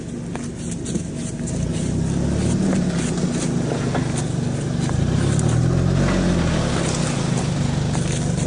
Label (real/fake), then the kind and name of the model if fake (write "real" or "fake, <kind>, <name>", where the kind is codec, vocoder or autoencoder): real